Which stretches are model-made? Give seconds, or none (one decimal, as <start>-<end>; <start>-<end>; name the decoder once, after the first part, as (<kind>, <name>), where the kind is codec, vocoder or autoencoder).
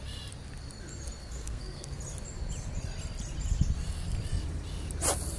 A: 1.2-2.0 (codec, SNAC)